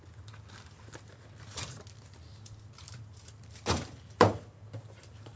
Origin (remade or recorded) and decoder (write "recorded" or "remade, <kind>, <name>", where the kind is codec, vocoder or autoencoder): recorded